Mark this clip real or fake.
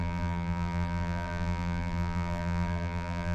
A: fake